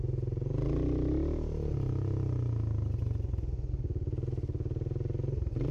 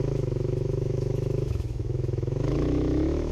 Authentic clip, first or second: first